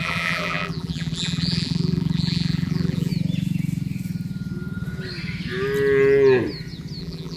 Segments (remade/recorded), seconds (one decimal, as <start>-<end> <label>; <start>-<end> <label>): 0.0-3.1 remade; 3.1-7.0 recorded; 7.0-7.4 remade